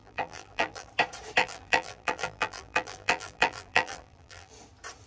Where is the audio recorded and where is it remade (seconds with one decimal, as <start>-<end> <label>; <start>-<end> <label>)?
0.0-0.9 remade; 0.9-1.4 recorded; 1.4-4.5 remade; 4.5-5.1 recorded